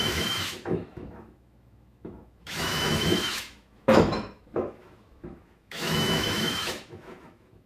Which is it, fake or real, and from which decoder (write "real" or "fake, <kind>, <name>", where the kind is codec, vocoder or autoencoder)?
fake, autoencoder, DAC-VAE